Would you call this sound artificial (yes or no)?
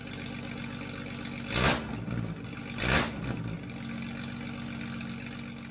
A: no